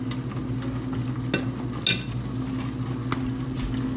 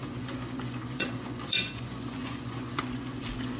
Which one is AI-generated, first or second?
second